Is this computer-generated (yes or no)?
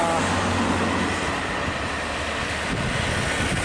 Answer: no